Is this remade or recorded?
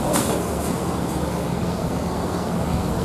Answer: remade